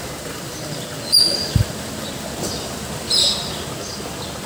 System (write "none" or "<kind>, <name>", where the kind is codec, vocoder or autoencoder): none